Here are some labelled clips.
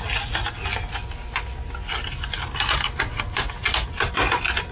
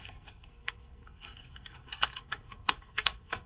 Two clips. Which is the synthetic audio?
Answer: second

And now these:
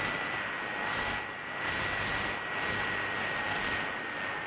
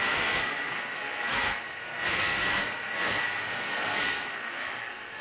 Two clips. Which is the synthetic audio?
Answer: second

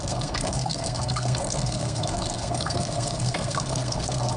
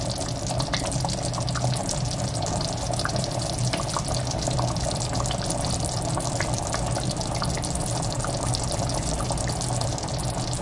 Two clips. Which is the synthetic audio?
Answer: first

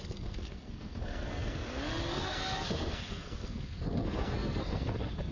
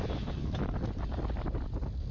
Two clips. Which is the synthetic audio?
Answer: first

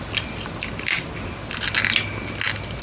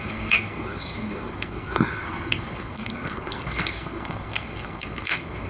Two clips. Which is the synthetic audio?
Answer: second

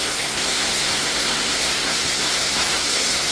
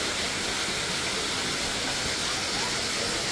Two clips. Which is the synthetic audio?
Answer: first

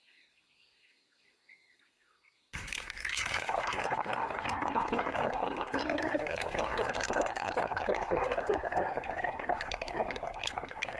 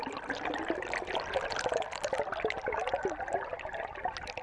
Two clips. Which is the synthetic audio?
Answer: first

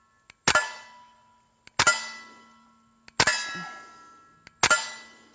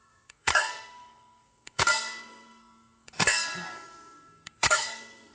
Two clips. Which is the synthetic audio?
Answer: second